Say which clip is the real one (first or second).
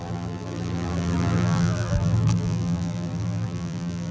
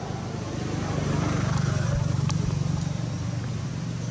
second